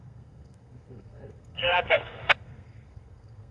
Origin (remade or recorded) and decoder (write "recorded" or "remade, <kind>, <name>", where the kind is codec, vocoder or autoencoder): remade, codec, SNAC